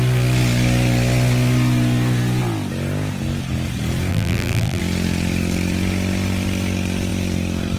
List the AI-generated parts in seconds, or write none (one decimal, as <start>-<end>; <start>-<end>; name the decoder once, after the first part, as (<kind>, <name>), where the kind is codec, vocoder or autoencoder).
4.1-4.8 (vocoder, BigVGAN v2)